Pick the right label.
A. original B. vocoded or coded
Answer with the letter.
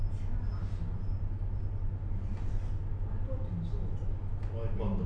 A